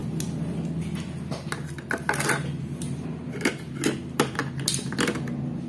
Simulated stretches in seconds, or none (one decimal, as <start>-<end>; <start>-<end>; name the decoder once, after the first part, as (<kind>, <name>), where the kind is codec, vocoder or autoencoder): none